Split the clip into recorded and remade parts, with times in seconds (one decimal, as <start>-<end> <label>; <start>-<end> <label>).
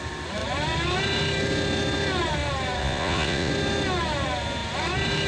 0.0-2.8 recorded; 2.8-3.5 remade; 3.5-5.3 recorded